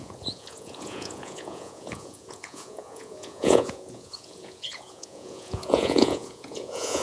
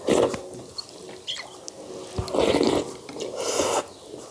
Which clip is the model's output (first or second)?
first